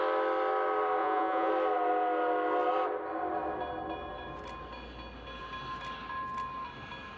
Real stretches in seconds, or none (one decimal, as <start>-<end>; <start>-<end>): 0.0-1.0; 1.5-7.2